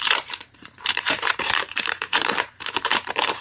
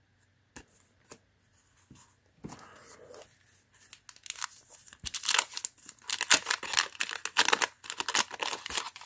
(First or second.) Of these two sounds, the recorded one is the second